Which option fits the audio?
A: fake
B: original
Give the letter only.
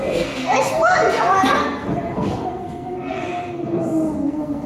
A